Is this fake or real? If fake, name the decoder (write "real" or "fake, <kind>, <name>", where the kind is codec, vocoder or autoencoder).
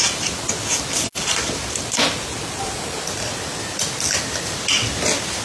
real